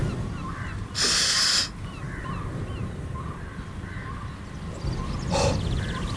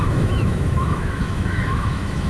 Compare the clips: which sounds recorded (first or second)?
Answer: first